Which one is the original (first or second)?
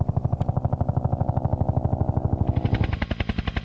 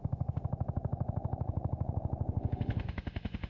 first